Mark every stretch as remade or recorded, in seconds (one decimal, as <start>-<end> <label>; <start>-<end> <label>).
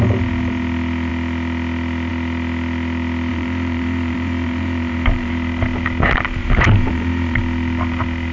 0.0-3.3 recorded; 3.3-5.3 remade; 5.3-6.4 recorded; 6.4-7.4 remade; 7.4-8.3 recorded